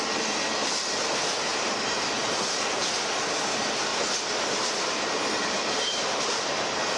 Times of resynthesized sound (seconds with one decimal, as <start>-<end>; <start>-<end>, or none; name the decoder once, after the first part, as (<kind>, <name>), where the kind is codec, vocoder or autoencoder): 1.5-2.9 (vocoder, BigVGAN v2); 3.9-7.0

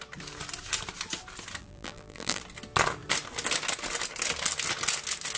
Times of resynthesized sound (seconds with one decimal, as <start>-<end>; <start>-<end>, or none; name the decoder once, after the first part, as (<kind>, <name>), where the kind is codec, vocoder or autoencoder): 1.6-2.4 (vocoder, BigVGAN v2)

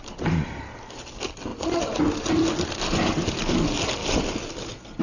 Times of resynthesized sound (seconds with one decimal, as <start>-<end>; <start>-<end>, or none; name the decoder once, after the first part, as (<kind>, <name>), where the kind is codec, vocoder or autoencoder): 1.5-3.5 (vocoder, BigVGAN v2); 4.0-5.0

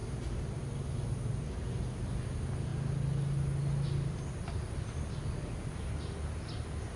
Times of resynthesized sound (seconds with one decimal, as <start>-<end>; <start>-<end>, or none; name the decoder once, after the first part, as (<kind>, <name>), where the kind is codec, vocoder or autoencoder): 0.0-0.6 (vocoder, BigVGAN v2)

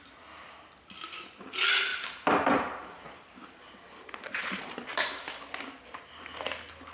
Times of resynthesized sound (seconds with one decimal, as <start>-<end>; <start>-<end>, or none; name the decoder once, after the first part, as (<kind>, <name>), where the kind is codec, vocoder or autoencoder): 1.9-5.5 (vocoder, BigVGAN v2)

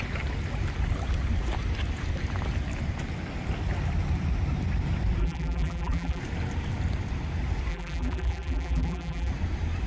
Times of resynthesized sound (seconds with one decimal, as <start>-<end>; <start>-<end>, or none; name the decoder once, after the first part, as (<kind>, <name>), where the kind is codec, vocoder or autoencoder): 5.2-6.2 (vocoder, BigVGAN v2); 7.7-9.3

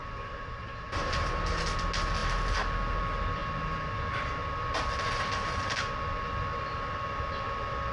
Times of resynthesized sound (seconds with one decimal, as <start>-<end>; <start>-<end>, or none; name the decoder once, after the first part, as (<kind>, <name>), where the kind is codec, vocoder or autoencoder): 0.0-1.6 (vocoder, BigVGAN v2)

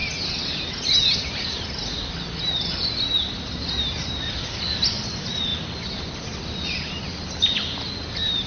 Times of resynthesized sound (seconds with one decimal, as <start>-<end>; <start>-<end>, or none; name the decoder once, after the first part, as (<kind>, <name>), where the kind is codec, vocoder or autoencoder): none